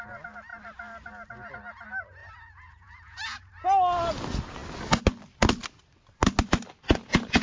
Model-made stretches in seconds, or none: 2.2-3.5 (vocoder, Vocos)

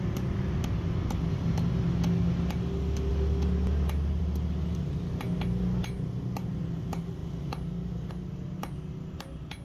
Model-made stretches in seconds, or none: none